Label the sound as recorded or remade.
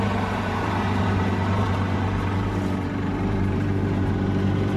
remade